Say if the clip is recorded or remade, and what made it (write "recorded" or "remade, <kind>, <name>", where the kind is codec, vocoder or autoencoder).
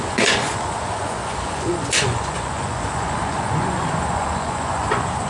remade, vocoder, Vocos